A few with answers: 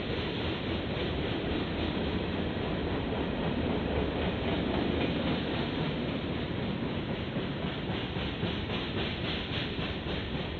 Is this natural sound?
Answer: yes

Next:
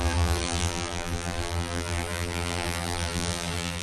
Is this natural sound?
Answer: no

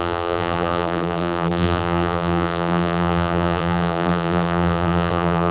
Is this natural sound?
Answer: no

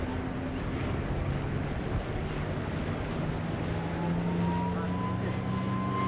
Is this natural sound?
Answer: yes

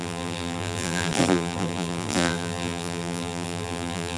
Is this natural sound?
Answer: no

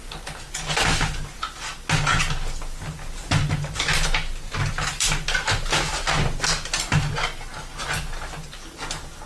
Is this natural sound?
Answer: yes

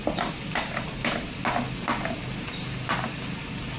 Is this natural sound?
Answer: yes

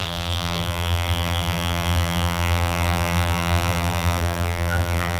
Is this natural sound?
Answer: no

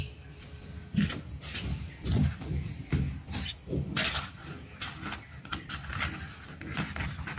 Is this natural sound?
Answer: yes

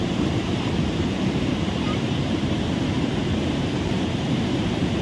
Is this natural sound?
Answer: no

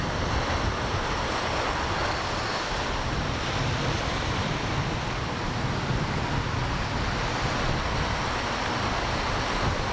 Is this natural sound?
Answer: yes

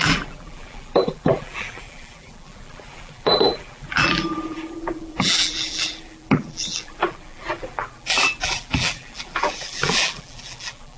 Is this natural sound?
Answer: no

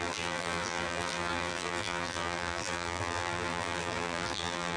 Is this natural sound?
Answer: no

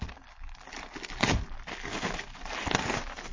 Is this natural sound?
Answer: yes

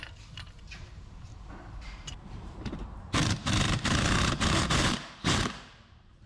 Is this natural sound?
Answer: no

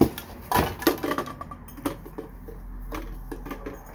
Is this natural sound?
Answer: yes